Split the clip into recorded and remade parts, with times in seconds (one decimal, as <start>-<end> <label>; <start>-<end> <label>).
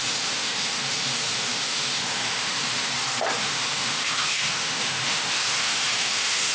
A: 0.0-2.9 remade; 2.9-3.4 recorded; 3.4-6.5 remade